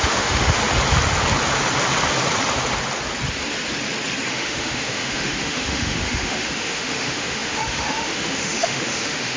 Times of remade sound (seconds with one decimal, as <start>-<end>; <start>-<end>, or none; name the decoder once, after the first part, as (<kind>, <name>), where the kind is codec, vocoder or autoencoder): 0.0-0.6 (autoencoder, DAC-VAE); 4.3-9.4